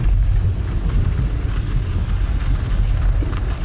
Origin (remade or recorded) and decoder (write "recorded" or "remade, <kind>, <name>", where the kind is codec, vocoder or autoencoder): recorded